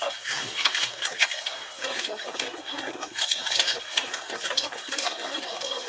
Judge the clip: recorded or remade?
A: remade